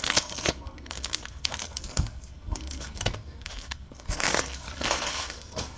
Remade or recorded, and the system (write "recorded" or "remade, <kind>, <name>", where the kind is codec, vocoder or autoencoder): remade, codec, SNAC